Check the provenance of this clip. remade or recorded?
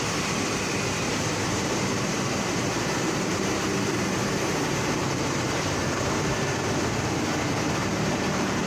remade